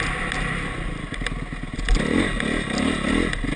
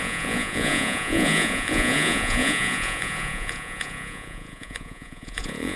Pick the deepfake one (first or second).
second